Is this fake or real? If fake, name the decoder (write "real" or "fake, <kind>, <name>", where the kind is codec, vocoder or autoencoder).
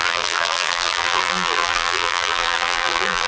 fake, vocoder, BigVGAN v2